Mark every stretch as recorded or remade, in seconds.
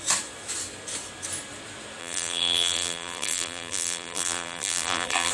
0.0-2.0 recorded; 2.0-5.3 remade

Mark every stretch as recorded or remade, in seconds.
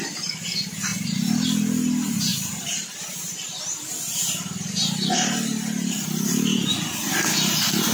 0.0-0.9 recorded; 0.9-1.4 remade; 1.4-7.9 recorded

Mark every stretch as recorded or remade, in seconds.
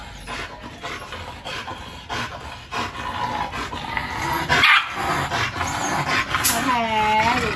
0.0-1.5 recorded; 1.5-2.1 remade; 2.1-7.6 recorded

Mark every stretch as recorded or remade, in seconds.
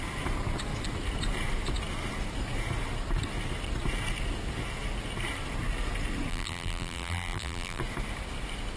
0.0-6.3 recorded; 6.3-7.8 remade; 7.8-8.8 recorded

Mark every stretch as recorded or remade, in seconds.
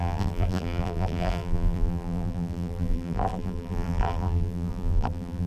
0.0-5.5 remade